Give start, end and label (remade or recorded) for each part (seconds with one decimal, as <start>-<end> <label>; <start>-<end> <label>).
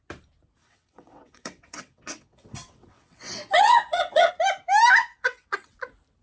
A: 0.0-0.6 recorded; 0.6-4.3 remade; 4.3-5.0 recorded; 5.0-5.8 remade; 5.8-6.2 recorded